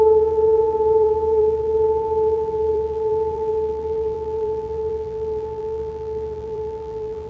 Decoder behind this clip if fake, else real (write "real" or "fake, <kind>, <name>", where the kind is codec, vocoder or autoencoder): fake, vocoder, BigVGAN v2